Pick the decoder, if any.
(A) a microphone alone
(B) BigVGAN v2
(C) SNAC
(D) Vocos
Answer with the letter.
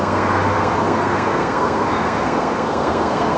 C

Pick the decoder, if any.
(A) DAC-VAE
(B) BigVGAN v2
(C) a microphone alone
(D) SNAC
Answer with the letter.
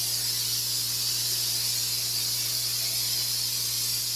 C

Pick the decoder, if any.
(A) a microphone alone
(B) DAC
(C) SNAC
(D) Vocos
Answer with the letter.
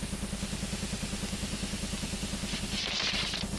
A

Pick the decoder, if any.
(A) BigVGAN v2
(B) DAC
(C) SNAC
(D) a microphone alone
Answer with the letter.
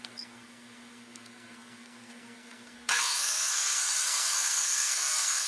C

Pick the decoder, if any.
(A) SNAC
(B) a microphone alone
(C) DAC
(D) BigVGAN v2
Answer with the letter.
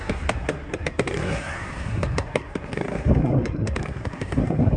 A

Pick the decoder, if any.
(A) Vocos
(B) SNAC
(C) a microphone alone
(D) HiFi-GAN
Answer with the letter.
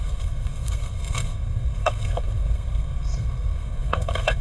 B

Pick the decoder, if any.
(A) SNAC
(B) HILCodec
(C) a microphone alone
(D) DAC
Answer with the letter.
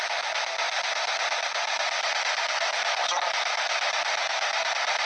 C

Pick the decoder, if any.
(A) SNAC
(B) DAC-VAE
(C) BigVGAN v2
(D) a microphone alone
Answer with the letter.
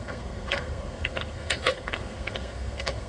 A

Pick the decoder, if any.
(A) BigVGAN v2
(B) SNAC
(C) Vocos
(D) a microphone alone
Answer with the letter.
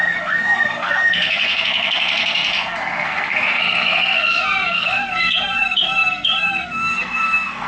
B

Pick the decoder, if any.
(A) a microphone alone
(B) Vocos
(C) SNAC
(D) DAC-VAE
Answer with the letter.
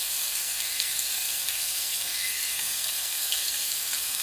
C